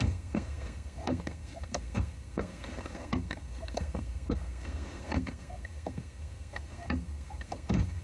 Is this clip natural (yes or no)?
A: no